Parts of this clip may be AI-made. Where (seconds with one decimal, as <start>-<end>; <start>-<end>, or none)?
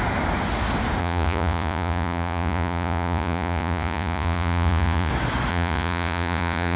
1.0-5.1; 5.5-6.8